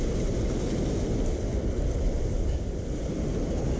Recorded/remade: remade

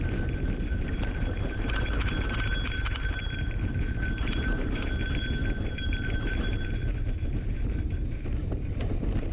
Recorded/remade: remade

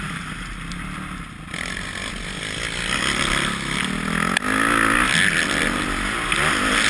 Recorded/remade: recorded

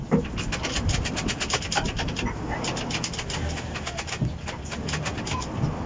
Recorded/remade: recorded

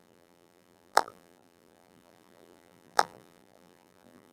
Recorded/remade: remade